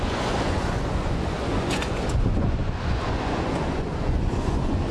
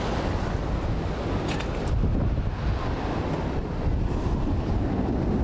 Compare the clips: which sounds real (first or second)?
second